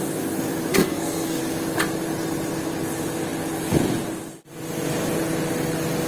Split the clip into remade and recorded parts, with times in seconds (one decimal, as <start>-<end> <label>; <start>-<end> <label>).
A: 0.0-0.7 recorded; 0.7-1.4 remade; 1.4-6.1 recorded